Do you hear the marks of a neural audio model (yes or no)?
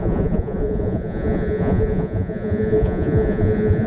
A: yes